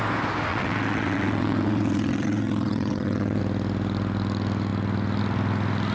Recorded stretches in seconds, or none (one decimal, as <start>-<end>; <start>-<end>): 0.0-0.5; 3.4-5.9